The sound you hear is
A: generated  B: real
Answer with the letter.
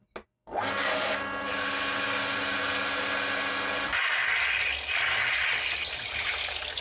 B